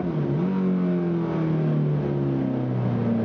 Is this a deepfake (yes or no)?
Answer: no